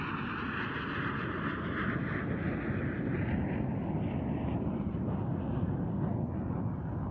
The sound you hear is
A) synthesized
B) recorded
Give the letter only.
B